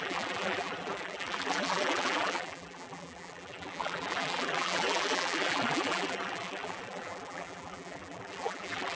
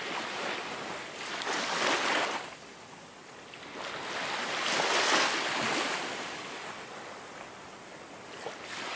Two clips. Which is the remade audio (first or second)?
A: first